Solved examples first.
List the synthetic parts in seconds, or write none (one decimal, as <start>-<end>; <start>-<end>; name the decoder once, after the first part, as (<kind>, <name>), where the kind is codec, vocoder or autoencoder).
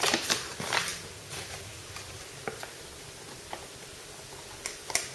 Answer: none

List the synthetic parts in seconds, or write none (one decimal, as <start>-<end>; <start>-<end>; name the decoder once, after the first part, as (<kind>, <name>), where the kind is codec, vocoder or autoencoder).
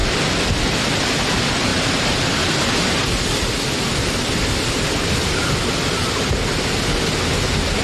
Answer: none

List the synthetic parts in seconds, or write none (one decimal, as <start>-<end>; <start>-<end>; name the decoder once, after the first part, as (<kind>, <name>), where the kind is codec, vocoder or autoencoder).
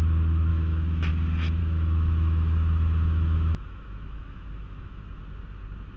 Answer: 0.5-1.1 (autoencoder, DAC-VAE); 1.6-5.2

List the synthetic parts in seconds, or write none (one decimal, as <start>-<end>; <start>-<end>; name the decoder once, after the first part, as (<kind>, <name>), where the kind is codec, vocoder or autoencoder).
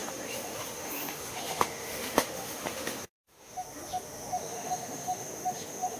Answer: 0.0-6.0 (autoencoder, DAC-VAE)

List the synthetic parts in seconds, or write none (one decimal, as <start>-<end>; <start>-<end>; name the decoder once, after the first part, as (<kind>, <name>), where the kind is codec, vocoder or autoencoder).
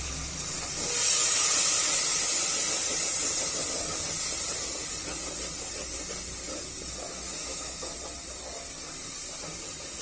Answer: 7.4-7.9 (autoencoder, DAC-VAE)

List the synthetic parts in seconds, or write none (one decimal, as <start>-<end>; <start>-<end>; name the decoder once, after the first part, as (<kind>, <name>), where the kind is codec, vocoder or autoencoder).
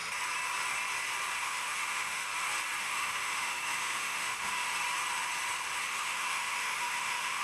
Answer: 1.4-2.3 (autoencoder, DAC-VAE); 2.8-4.7; 5.8-7.4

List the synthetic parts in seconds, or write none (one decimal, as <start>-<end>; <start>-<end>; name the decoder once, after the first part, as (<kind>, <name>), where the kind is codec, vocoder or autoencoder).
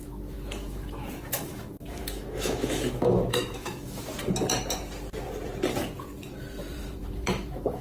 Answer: 0.0-4.0 (autoencoder, DAC-VAE); 6.8-7.8